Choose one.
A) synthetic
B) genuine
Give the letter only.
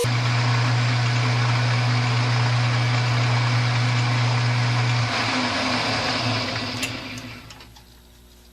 B